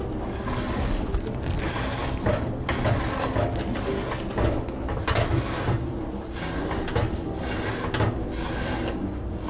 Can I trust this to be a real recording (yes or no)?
yes